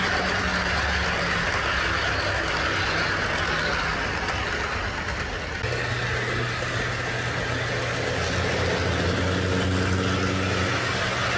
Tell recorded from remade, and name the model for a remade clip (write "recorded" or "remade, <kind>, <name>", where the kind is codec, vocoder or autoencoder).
recorded